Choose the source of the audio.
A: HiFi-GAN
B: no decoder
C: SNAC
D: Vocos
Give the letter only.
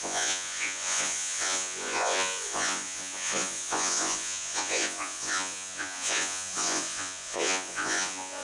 D